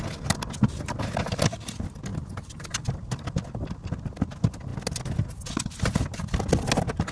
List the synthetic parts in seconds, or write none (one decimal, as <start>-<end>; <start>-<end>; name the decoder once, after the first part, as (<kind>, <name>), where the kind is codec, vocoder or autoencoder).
2.1-2.7 (vocoder, BigVGAN v2)